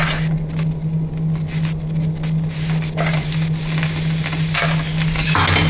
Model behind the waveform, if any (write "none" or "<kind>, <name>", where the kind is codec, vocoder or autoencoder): none